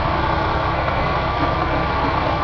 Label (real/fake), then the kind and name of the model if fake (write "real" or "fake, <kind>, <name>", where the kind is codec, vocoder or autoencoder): fake, codec, SNAC